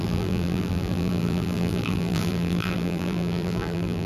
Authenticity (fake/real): fake